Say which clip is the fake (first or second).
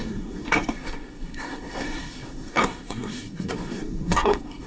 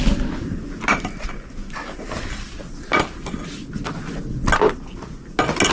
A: first